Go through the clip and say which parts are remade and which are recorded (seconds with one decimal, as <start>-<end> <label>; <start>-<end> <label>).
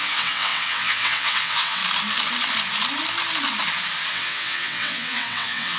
0.0-1.8 remade; 1.8-4.1 recorded; 4.1-5.8 remade